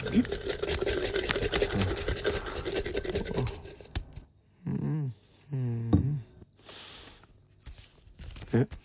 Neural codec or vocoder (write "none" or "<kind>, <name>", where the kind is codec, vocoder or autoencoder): none